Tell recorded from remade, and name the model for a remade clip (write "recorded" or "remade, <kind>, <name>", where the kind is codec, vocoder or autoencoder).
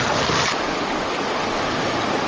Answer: recorded